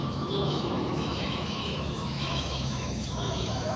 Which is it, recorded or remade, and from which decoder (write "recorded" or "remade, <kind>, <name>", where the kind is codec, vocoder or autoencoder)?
remade, autoencoder, DAC-VAE